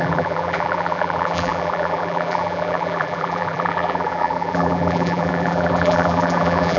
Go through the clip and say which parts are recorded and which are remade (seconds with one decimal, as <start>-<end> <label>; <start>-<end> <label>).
0.0-6.8 remade